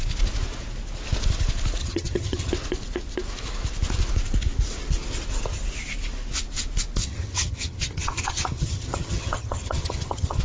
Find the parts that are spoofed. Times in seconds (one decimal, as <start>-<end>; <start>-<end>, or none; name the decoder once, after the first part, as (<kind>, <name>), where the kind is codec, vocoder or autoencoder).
1.8-2.5 (vocoder, HiFi-GAN); 7.0-10.4